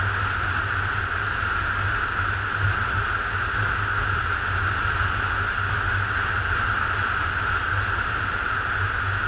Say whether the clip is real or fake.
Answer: real